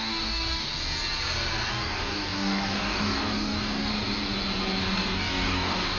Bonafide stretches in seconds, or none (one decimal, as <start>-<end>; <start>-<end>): 0.7-1.7; 3.9-4.8